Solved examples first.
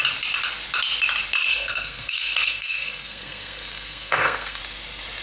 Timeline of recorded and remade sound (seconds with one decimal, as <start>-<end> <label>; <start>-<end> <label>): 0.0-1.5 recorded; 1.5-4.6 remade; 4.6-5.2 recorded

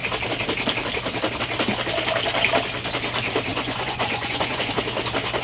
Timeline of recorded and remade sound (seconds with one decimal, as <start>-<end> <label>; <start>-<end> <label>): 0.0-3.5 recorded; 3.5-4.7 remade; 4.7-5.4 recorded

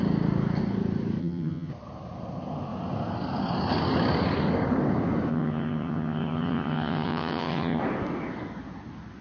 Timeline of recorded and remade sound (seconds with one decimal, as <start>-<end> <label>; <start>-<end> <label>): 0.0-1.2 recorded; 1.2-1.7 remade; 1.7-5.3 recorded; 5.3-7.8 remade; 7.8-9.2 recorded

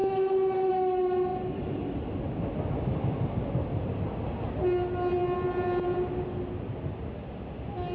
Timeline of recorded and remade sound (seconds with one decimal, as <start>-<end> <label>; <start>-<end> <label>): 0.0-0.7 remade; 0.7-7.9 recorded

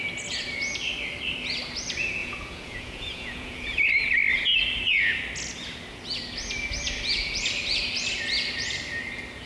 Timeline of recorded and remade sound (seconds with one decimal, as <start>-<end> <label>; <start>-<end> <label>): 0.0-2.2 recorded; 2.2-3.9 remade; 3.9-9.5 recorded

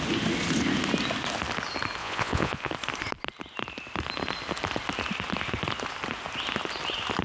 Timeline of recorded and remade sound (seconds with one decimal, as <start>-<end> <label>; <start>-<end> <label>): 0.0-2.0 recorded; 2.0-2.7 remade; 2.7-7.2 recorded